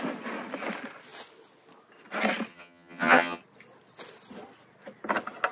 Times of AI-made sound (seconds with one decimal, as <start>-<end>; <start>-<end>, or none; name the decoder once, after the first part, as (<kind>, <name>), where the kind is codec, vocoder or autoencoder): 2.5-3.4 (vocoder, HiFi-GAN)